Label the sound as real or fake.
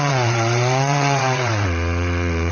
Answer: fake